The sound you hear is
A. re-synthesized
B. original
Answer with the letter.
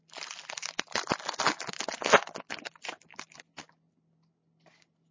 B